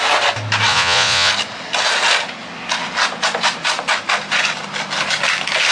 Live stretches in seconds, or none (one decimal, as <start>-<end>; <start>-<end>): 0.0-0.7; 1.3-5.7